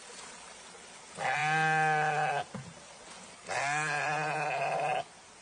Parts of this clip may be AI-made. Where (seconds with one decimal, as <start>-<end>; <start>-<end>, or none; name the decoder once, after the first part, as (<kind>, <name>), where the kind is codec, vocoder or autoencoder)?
none